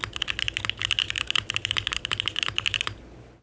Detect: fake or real real